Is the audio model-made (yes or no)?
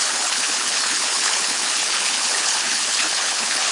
yes